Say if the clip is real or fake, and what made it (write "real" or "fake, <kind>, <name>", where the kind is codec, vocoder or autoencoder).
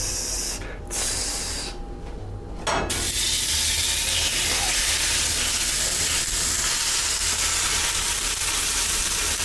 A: real